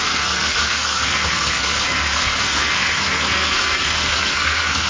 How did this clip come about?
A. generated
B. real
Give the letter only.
A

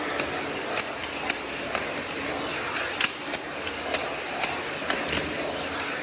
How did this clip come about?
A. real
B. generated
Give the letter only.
A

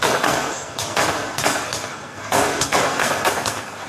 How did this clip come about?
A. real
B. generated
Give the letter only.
B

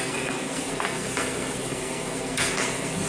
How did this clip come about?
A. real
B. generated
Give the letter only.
B